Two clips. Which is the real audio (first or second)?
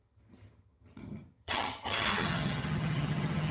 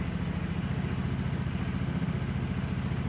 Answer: second